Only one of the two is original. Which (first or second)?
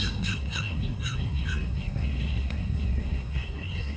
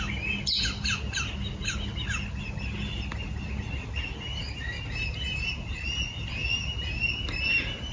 second